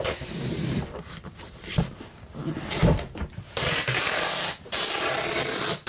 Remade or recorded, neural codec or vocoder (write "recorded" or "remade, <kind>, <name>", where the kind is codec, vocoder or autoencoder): remade, vocoder, BigVGAN v2